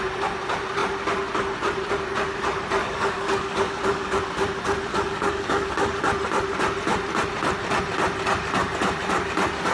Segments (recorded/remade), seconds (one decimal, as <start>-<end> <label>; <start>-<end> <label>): 0.0-2.8 recorded; 2.8-4.2 remade; 4.2-4.9 recorded; 4.9-6.0 remade; 6.0-9.7 recorded